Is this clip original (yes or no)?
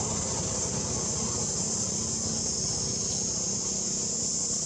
yes